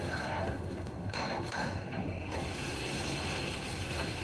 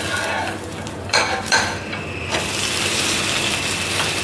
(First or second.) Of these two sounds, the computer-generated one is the first